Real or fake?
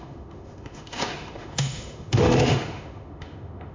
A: fake